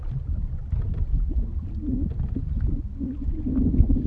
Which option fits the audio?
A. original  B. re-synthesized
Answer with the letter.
A